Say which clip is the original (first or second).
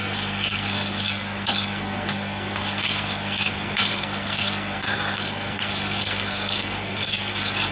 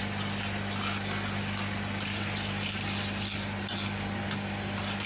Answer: second